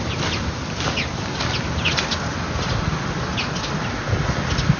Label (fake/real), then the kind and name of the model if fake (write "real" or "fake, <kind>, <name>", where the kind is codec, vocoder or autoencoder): real